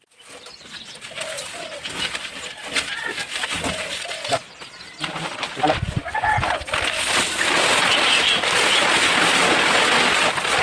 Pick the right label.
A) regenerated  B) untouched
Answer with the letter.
B